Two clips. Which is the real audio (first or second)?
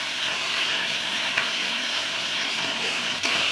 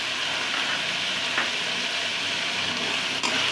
second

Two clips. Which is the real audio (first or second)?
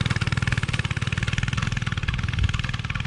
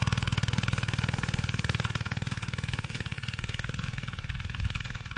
first